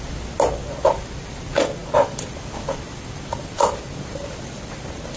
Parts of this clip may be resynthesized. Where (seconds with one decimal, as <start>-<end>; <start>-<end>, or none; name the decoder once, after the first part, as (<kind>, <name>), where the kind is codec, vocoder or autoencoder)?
none

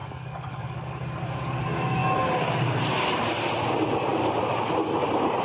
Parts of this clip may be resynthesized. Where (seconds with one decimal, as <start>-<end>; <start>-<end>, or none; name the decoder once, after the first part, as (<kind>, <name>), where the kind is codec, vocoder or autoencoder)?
0.0-2.0 (codec, DAC)

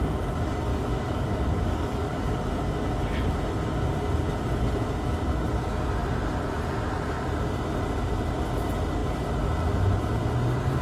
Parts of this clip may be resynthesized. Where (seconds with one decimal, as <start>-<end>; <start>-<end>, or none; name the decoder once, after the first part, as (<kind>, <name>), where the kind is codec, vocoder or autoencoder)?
0.7-2.5 (codec, DAC)

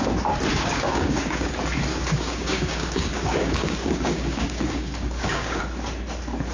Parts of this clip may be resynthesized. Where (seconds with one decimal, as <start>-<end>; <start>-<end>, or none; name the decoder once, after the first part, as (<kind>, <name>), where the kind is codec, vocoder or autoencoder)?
0.5-1.5 (codec, DAC); 1.9-5.6

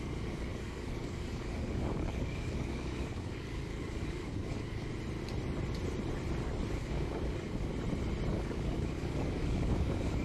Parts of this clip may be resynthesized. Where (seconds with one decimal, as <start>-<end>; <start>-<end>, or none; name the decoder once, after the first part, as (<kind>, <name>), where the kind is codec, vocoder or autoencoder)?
0.0-4.9 (codec, DAC); 6.8-7.7; 8.3-10.2

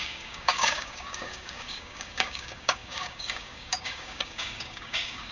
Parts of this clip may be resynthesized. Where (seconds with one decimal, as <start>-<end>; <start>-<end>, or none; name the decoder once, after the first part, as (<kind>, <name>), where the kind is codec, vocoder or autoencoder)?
0.0-5.3 (codec, DAC)

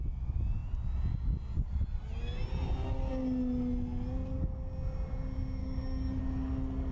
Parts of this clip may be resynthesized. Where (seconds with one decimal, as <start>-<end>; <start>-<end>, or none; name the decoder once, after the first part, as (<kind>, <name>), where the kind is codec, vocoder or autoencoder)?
5.6-6.2 (codec, DAC)